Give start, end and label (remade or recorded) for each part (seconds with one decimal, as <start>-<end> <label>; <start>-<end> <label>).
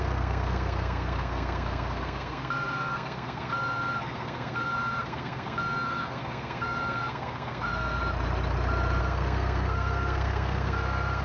0.0-8.0 remade; 8.0-9.0 recorded; 9.0-11.2 remade